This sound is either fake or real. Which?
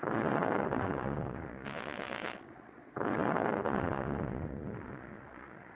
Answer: fake